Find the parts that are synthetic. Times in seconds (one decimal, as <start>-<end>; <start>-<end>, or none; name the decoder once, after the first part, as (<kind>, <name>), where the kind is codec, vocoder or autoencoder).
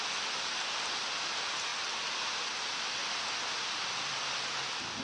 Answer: none